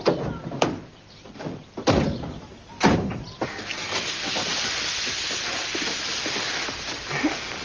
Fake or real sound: real